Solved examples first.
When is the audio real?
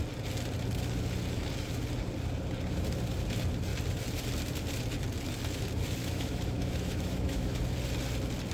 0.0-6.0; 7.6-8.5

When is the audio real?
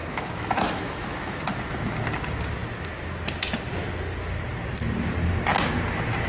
1.4-6.3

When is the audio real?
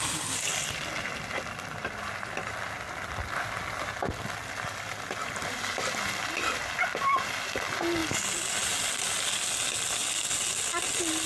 0.0-11.3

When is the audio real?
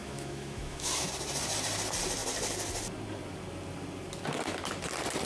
1.1-5.3